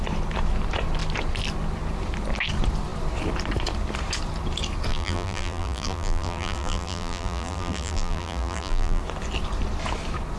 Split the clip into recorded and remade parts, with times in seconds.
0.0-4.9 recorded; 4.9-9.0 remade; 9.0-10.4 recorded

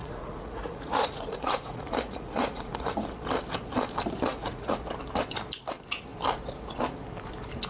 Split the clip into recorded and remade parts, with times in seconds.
0.0-2.9 remade; 2.9-4.3 recorded; 4.3-4.8 remade; 4.8-7.7 recorded

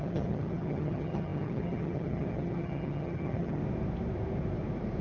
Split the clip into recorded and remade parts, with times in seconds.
0.0-3.6 remade; 3.6-5.0 recorded